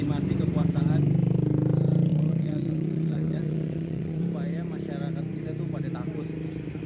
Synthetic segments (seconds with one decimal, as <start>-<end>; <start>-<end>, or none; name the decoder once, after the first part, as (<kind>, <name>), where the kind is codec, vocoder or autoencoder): 2.1-4.2 (vocoder, WaveNeXt)